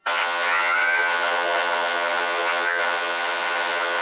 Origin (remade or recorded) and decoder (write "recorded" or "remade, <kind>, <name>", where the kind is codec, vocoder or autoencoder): remade, vocoder, HiFi-GAN